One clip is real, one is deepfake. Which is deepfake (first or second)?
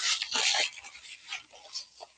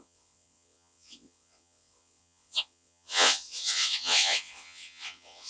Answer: second